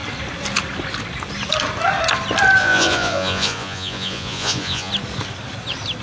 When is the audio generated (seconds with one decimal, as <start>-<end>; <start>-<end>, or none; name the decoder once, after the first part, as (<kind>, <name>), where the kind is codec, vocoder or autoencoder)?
2.6-4.9 (vocoder, Vocos)